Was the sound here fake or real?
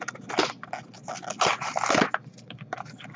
real